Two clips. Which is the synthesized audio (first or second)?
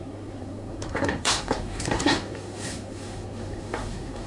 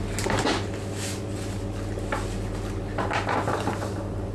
first